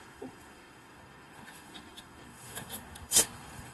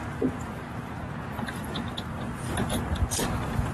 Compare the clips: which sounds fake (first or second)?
first